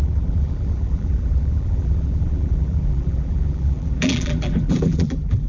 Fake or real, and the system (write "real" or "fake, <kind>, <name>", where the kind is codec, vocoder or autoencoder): fake, vocoder, BigVGAN v2